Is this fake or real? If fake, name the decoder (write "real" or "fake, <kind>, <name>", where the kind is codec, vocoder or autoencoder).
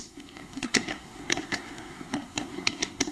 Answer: fake, codec, SNAC